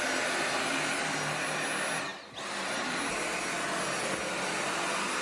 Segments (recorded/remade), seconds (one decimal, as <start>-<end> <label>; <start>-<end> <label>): 0.0-5.2 recorded